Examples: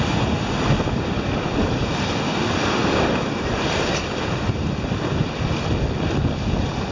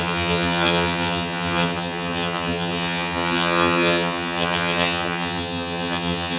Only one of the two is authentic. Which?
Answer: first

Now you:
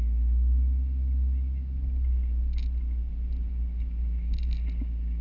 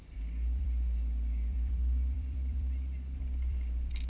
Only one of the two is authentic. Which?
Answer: first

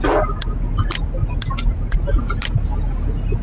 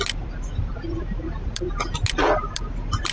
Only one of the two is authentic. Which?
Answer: first